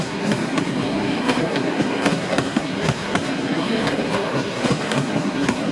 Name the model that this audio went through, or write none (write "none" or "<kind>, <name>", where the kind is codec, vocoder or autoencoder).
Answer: codec, SNAC